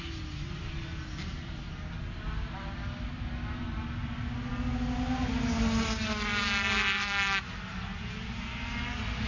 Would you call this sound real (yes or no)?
yes